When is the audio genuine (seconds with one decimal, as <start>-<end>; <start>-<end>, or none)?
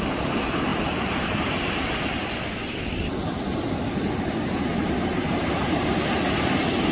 2.2-4.3